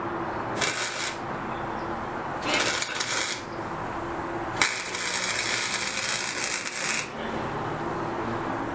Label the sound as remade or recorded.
recorded